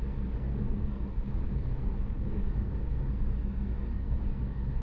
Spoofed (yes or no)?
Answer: yes